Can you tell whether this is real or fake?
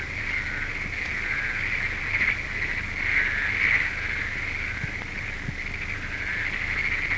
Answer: real